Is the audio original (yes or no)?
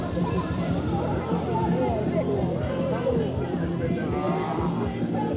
yes